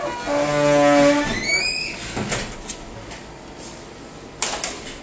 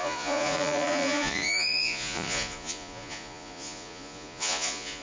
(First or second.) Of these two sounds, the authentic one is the first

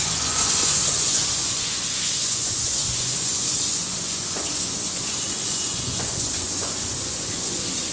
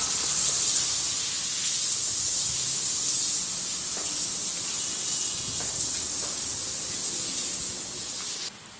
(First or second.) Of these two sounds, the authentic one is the second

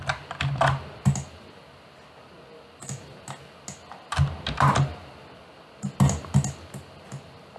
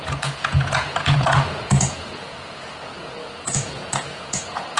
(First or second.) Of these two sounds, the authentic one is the first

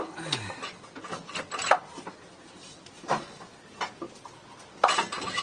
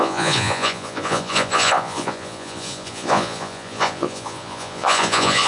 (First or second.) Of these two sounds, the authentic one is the first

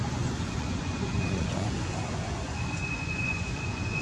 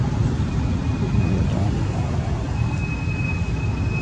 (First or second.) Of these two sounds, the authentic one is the second